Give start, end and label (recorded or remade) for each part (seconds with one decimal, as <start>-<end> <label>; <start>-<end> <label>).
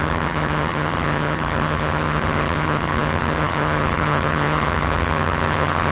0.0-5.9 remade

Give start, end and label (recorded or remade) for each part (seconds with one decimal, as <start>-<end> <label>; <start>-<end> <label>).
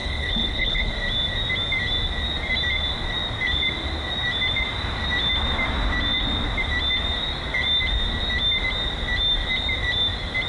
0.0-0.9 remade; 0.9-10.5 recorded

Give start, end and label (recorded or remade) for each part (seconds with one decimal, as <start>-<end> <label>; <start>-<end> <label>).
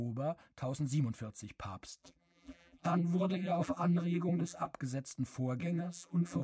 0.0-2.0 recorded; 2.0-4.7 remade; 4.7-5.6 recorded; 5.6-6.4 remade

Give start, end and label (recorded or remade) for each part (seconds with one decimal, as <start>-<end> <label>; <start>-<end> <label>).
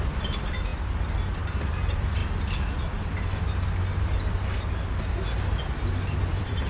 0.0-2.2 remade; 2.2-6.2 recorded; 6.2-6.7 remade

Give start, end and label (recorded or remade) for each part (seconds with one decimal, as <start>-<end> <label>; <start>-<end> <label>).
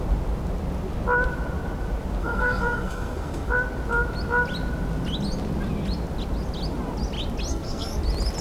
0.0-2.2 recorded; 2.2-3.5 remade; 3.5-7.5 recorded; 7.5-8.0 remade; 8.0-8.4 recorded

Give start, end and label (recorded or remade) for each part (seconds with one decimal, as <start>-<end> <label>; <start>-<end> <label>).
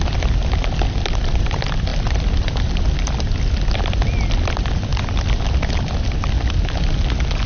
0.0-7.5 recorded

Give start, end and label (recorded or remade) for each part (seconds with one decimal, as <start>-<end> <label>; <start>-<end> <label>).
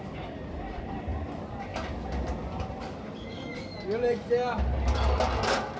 0.0-5.8 recorded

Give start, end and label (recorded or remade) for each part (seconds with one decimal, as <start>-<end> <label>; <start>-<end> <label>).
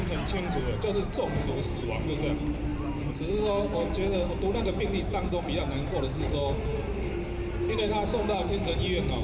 0.0-9.2 recorded